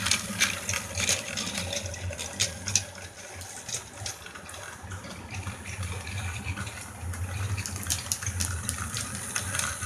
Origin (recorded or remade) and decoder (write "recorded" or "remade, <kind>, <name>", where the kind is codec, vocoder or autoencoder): recorded